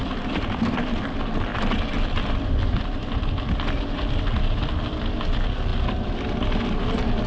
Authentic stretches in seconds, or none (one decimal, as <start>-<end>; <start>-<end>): 0.0-7.3